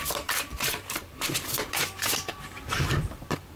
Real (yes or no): no